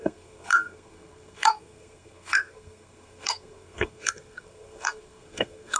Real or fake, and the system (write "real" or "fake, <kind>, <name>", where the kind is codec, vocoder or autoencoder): fake, codec, SNAC